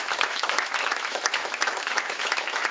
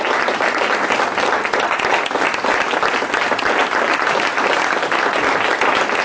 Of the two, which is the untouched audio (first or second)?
second